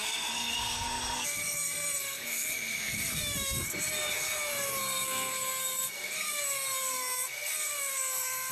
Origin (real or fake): fake